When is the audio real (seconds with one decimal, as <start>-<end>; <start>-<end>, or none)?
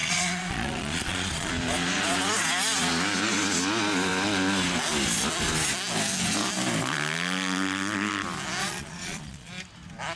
1.5-8.6; 9.5-10.2